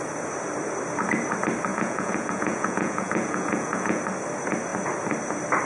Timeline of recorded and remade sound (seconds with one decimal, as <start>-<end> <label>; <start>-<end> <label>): 0.0-1.7 recorded; 1.7-4.0 remade; 4.0-5.7 recorded